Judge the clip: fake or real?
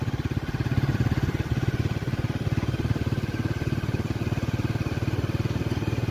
real